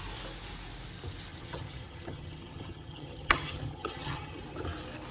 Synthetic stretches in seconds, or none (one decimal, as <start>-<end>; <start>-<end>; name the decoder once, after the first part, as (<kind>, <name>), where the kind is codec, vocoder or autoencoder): 1.3-4.4 (vocoder, HiFi-GAN)